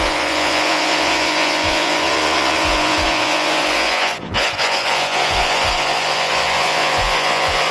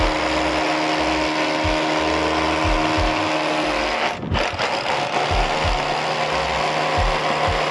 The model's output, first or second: first